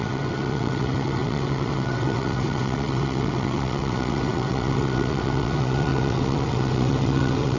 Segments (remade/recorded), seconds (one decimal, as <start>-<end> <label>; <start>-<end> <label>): 0.0-7.6 remade